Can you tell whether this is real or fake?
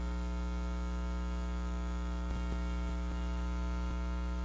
fake